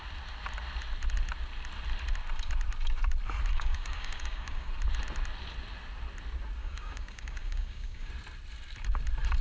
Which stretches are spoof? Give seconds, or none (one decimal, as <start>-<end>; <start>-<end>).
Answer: 3.5-4.7; 6.6-8.1